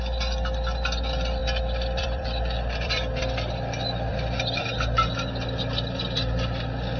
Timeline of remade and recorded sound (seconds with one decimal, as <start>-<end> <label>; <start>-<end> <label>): 0.0-1.4 recorded; 1.4-3.2 remade; 3.2-4.1 recorded; 4.1-4.6 remade; 4.6-7.0 recorded